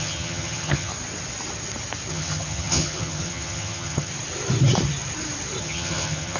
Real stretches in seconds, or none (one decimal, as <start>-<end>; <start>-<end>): 0.9-2.1; 4.1-5.6